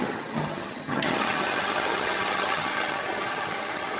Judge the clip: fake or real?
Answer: fake